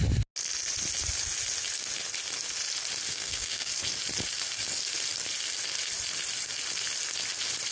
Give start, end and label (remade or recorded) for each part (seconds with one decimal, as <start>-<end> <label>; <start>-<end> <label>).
0.0-3.1 recorded; 3.1-3.7 remade; 3.7-7.7 recorded